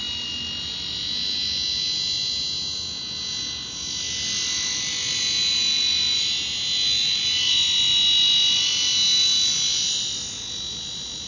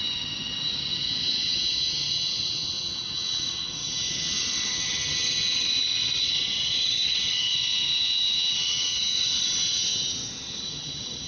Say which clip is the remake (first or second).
second